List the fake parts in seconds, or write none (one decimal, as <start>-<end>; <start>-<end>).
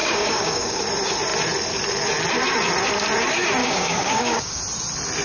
0.0-0.8; 3.6-4.6